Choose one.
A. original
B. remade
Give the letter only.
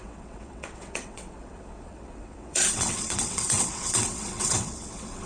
B